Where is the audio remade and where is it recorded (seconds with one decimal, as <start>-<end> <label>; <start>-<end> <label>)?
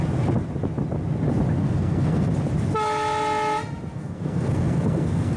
0.0-1.6 recorded; 1.6-2.3 remade; 2.3-3.9 recorded; 3.9-5.4 remade